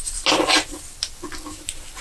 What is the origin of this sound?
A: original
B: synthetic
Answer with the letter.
A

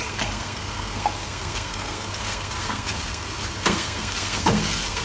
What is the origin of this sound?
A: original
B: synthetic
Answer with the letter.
B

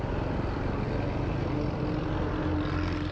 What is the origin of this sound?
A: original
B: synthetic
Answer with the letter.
A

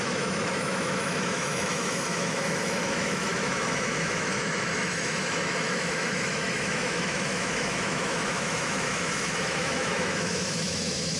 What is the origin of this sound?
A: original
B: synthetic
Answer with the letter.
B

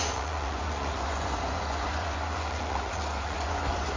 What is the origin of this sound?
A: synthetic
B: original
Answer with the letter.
A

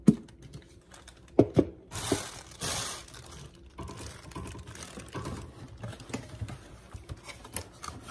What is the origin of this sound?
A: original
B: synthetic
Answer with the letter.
A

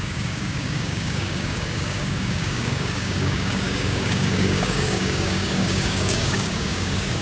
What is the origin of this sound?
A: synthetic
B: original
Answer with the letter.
A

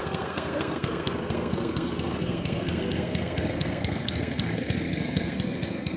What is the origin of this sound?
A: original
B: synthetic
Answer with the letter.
B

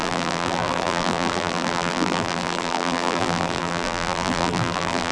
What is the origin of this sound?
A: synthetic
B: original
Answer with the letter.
A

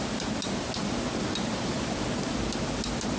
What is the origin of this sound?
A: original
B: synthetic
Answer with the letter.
A